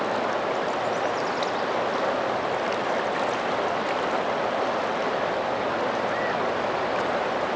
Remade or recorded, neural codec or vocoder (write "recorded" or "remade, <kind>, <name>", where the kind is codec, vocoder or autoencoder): recorded